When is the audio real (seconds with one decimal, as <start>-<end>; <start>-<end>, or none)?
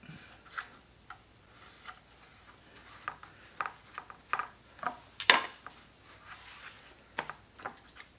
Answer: 0.0-8.2